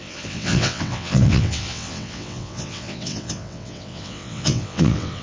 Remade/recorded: remade